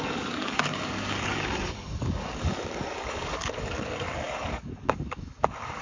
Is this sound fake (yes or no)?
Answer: yes